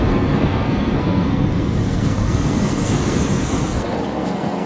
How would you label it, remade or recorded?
remade